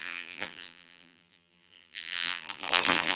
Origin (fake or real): fake